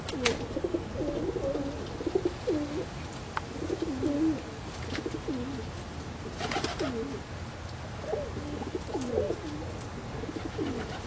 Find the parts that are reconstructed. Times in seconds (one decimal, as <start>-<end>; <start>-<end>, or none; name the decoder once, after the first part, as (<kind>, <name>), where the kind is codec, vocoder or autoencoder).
none